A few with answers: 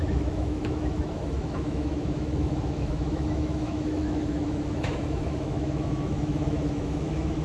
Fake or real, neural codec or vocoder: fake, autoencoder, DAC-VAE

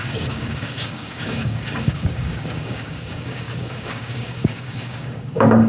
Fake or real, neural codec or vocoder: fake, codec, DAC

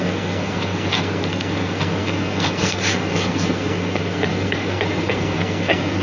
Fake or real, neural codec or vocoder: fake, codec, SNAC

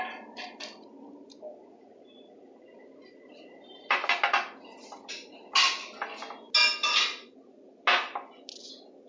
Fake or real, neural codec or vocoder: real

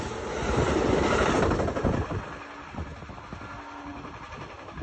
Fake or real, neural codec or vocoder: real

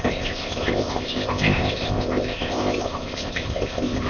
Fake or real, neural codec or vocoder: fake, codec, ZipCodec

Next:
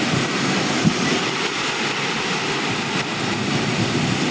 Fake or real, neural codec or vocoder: fake, vocoder, BigVGAN v2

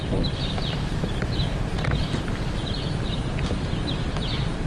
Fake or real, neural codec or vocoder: fake, vocoder, BigVGAN v2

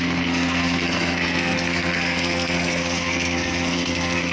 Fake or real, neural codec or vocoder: fake, codec, SNAC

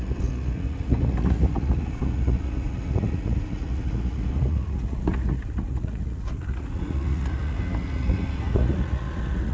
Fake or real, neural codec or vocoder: fake, vocoder, Vocos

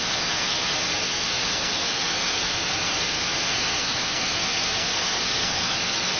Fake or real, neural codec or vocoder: fake, codec, SNAC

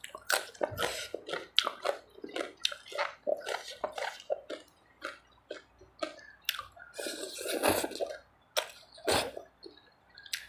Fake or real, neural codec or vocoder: real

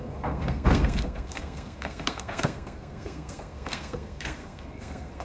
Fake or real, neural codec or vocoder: fake, codec, SNAC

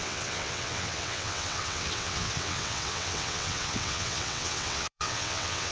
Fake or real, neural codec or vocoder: fake, vocoder, WaveNeXt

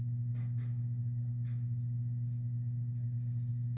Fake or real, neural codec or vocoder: real